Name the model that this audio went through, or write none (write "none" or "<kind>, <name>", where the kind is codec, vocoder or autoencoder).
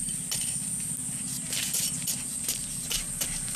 none